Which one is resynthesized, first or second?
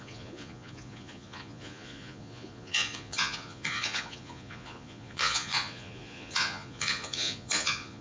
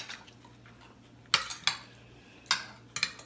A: first